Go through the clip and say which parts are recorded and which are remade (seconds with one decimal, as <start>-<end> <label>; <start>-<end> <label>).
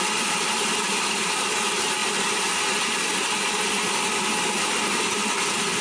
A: 0.0-5.8 recorded